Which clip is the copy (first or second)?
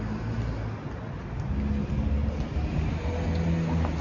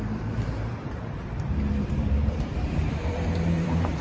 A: second